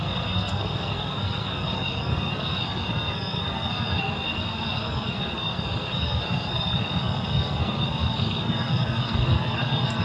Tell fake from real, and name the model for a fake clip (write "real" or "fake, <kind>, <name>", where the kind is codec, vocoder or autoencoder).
fake, codec, SNAC